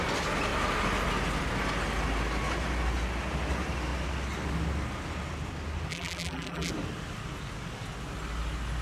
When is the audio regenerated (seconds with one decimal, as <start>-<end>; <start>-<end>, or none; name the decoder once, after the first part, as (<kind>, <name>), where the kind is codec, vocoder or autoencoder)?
5.9-6.7 (vocoder, BigVGAN v2)